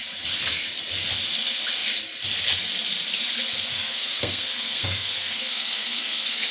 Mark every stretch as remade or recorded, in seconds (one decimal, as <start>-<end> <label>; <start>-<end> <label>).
0.0-3.7 recorded; 3.7-6.5 remade